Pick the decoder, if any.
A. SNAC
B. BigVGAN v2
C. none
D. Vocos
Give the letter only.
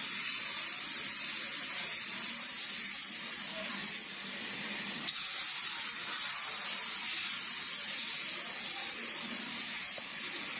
C